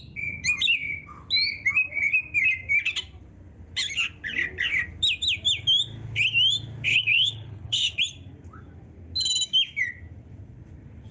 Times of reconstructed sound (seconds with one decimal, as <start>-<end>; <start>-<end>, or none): 6.9-8.0

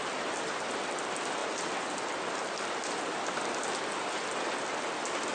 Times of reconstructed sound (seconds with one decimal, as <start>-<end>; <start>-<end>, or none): none

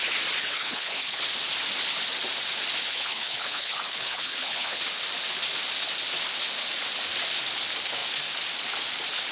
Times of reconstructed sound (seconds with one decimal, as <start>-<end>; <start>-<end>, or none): 0.4-1.2; 2.9-4.8

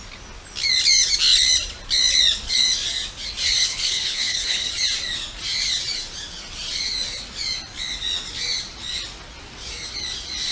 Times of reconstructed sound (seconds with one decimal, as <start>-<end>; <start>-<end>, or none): 3.7-4.7

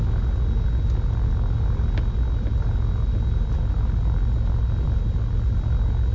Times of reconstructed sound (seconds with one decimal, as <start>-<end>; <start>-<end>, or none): none

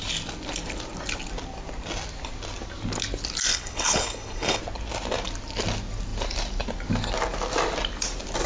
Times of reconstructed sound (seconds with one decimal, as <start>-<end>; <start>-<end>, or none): 3.5-4.6